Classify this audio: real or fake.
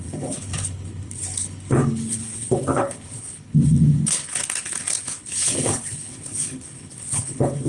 fake